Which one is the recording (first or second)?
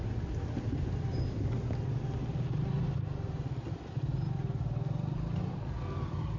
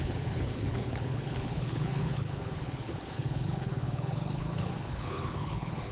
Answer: first